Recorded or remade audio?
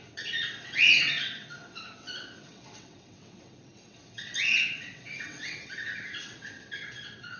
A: remade